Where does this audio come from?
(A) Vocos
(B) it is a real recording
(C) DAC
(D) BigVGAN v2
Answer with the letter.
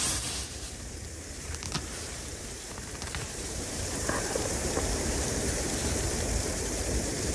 D